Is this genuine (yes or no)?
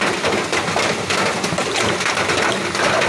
yes